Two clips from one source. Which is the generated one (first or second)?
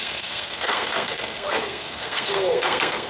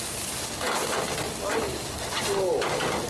first